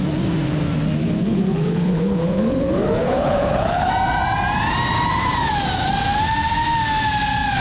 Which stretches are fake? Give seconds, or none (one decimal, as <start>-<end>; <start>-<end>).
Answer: 1.0-3.9